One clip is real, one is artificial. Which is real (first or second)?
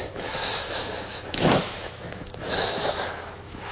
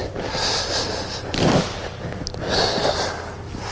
second